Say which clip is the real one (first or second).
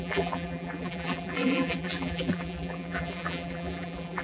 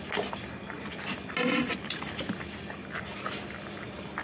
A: second